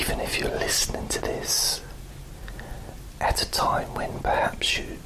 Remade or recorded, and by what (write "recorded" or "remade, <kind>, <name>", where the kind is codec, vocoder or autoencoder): recorded